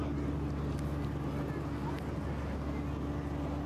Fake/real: real